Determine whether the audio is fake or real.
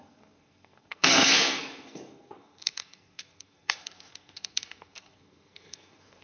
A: fake